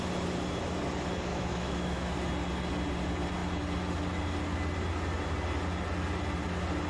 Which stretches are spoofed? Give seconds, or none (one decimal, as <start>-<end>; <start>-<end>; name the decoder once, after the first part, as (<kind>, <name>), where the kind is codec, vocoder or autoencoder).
1.3-2.1 (autoencoder, DAC-VAE)